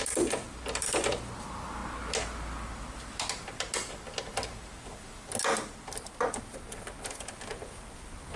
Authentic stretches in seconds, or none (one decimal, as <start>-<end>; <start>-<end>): 0.0-8.4